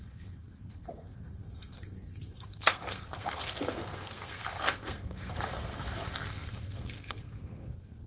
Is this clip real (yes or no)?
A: no